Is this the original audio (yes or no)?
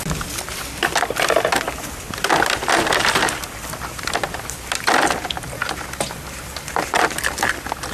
yes